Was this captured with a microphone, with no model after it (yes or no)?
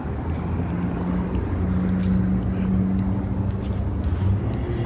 yes